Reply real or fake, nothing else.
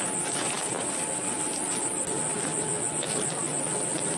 real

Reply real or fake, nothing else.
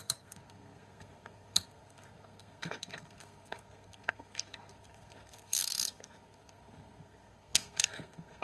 fake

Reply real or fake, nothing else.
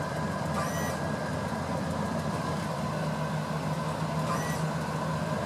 real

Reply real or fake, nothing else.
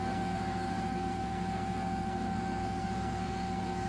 fake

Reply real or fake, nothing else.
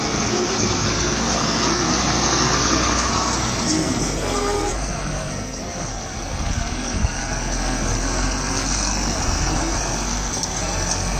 fake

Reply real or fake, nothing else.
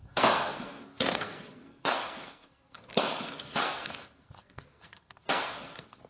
fake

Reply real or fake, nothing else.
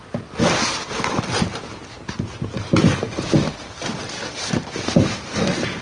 real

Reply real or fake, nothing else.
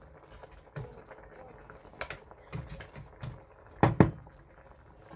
real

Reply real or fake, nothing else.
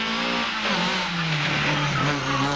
real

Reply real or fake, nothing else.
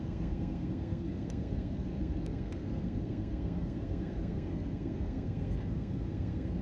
fake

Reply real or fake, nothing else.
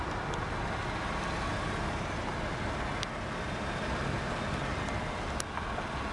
real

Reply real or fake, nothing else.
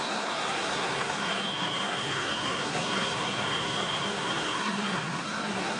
fake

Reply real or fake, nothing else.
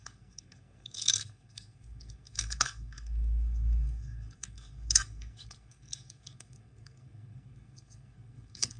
fake